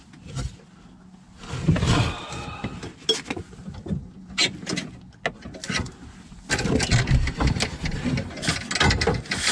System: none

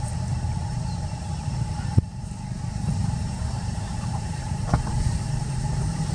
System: vocoder, BigVGAN v2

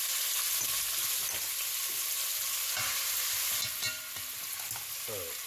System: none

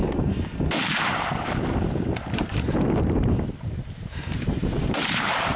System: vocoder, BigVGAN v2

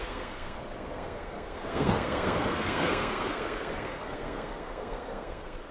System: codec, SNAC